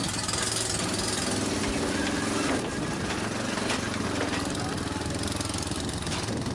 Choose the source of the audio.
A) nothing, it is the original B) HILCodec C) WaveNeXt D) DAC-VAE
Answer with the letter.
A